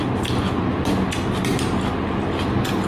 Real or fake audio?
real